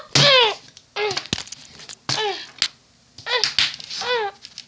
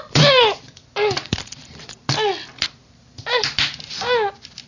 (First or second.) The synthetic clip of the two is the second